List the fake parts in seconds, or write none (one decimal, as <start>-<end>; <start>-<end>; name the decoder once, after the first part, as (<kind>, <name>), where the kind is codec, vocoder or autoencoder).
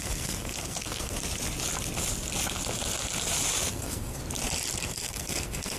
0.0-1.2 (codec, SNAC); 3.7-4.2; 4.8-5.8